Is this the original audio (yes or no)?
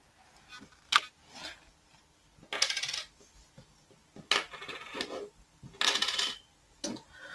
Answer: yes